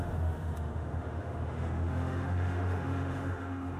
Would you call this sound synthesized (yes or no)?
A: yes